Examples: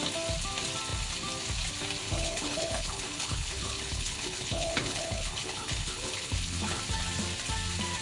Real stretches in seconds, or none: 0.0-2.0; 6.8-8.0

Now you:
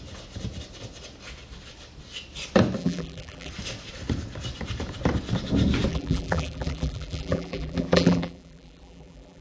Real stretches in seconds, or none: 0.0-2.8; 3.5-5.9

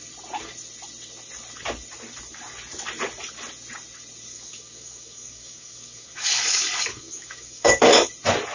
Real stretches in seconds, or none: 0.0-4.3; 8.1-8.5